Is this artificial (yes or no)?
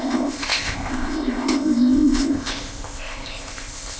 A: yes